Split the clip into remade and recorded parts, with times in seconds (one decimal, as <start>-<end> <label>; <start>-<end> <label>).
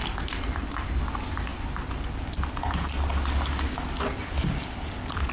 0.0-5.3 recorded